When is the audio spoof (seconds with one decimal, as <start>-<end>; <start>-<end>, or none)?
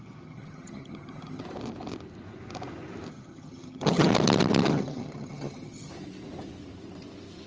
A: 0.0-1.4; 3.1-4.1; 4.7-5.9